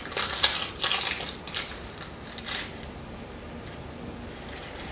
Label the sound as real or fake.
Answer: fake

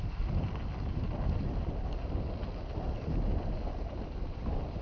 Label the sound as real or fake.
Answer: real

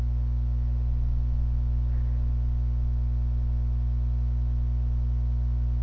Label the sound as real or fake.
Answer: real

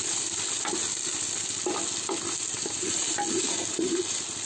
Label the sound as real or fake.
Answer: real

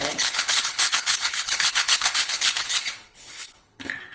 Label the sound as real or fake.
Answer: fake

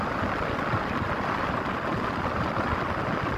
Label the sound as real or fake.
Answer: real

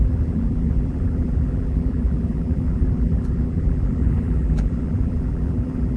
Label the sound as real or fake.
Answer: fake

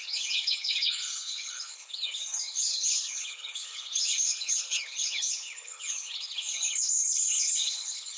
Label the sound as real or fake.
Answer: fake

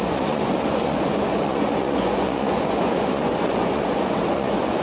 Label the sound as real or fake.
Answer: fake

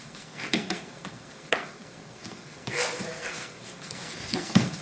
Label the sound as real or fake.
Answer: fake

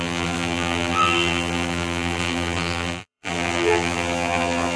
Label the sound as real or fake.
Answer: fake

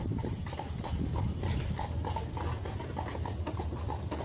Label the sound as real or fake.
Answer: real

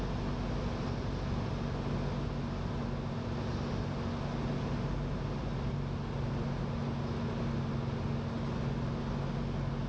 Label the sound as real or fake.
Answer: real